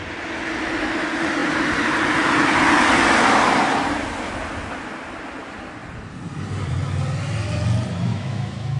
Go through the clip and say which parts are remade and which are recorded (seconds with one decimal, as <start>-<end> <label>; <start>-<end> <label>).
0.0-8.1 recorded; 8.1-8.8 remade